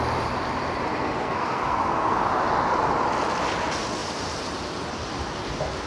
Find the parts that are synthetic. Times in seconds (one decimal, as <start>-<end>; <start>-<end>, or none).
0.9-2.2